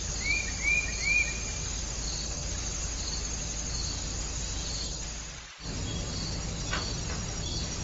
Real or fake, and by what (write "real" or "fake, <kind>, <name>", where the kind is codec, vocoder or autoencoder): real